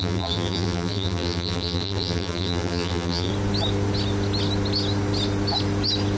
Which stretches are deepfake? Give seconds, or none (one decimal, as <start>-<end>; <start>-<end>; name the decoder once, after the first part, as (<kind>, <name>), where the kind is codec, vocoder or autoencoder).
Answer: 0.0-3.3 (vocoder, BigVGAN v2)